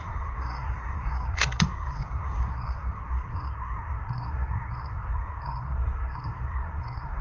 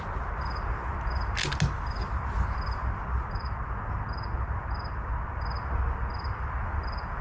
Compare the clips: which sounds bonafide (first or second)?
second